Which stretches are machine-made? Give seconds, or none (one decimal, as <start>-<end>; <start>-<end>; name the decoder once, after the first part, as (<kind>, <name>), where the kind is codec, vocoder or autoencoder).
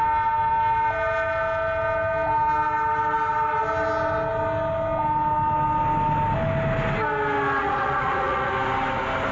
7.6-8.5 (vocoder, Vocos)